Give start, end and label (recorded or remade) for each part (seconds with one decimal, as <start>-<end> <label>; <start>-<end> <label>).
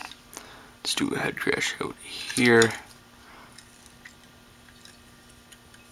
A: 0.0-5.9 recorded